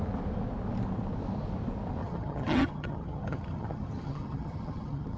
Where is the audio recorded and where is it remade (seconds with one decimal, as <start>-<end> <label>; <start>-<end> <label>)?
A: 0.0-2.0 recorded; 2.0-5.2 remade